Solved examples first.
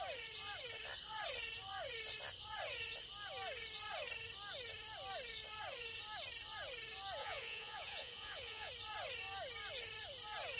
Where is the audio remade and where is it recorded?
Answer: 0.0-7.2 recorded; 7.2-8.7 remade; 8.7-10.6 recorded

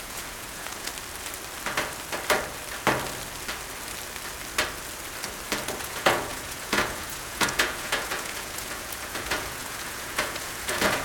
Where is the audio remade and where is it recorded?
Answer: 0.0-0.9 remade; 0.9-5.8 recorded; 5.8-11.0 remade

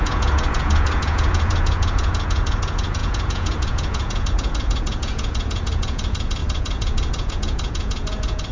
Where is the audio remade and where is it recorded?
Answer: 0.0-8.5 remade

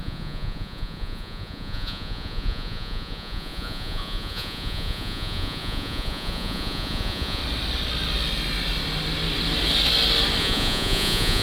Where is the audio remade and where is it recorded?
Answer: 0.0-7.4 remade; 7.4-10.4 recorded; 10.4-11.4 remade

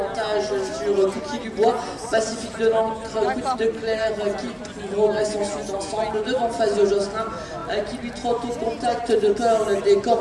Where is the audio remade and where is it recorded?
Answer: 0.0-10.2 recorded